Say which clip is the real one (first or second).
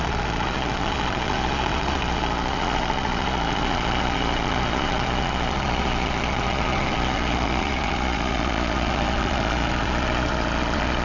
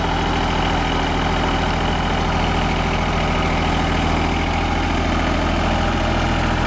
second